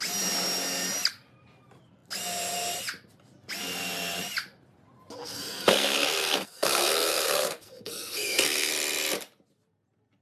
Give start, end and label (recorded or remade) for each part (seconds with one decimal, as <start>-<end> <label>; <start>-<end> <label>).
0.0-5.2 recorded; 5.2-8.7 remade; 8.7-10.2 recorded